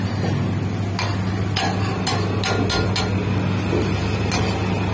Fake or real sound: real